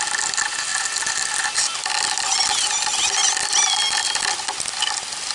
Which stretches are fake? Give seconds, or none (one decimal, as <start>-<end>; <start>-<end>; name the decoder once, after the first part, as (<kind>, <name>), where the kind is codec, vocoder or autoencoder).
none